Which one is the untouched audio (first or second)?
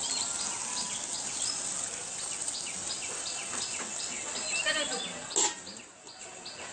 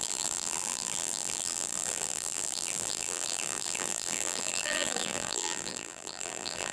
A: first